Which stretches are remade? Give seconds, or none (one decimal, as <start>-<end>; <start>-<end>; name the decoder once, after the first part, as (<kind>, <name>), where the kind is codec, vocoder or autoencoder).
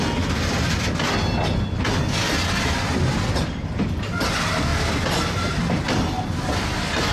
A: none